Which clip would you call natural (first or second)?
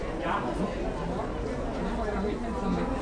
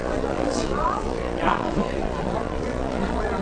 first